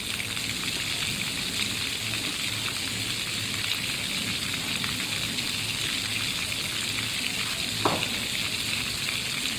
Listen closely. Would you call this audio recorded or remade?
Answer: recorded